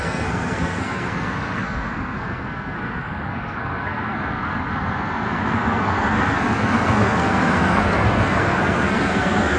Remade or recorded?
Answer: remade